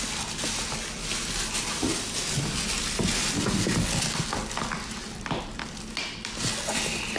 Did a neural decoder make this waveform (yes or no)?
no